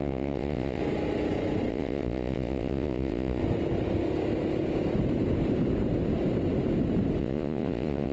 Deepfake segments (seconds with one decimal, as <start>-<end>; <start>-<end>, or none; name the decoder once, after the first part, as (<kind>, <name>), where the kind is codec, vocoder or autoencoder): 0.0-0.8 (vocoder, Vocos); 1.7-3.4; 7.2-8.1